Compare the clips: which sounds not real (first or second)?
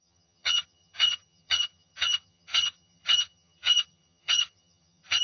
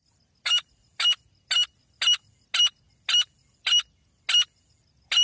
first